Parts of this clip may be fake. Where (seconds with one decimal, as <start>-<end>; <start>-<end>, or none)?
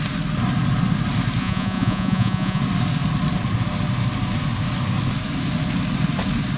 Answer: 1.4-2.6